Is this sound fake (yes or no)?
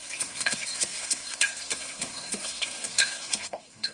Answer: yes